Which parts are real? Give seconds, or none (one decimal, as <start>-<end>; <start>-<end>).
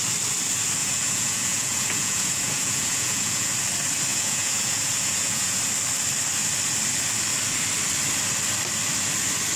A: 0.0-0.8; 3.5-4.1; 5.6-9.6